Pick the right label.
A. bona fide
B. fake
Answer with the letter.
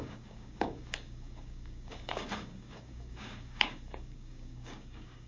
B